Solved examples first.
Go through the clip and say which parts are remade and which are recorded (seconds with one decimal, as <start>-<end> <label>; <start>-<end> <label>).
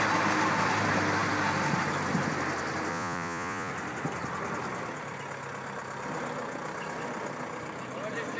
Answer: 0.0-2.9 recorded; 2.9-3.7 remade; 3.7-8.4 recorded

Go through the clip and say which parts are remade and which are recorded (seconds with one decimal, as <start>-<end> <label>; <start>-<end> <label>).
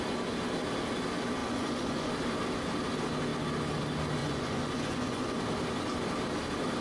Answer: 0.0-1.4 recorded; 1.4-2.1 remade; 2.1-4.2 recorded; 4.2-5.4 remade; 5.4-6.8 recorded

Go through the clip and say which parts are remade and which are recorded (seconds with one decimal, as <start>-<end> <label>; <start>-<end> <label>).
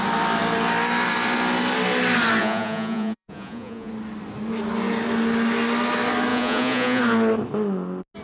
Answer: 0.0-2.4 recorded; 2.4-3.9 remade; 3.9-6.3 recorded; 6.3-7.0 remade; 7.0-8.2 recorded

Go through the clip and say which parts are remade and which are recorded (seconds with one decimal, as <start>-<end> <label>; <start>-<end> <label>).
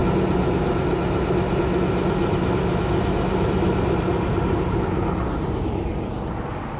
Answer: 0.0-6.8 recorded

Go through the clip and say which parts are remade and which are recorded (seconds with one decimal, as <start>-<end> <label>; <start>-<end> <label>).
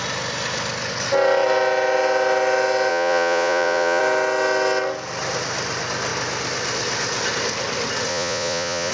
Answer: 0.0-2.9 recorded; 2.9-4.0 remade; 4.0-8.1 recorded; 8.1-8.9 remade